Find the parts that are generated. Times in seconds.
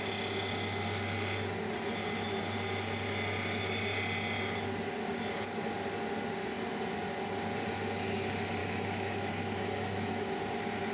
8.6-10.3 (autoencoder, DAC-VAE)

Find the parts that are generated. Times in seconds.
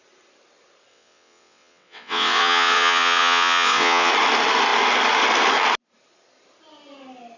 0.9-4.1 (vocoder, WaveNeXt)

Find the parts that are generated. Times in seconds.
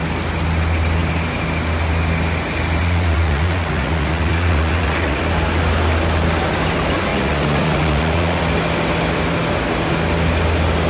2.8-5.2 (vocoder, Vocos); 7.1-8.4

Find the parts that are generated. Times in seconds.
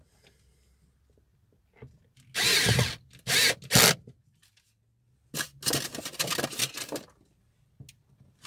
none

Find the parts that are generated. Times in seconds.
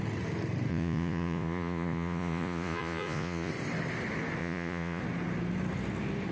0.7-3.5 (vocoder, Vocos); 4.4-5.0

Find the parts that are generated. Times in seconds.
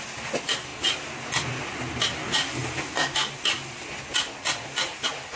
none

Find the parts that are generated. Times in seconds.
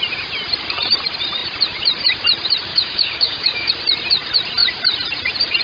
2.7-3.7 (codec, DAC)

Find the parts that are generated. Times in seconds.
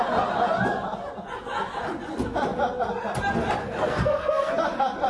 3.6-4.5 (codec, SNAC)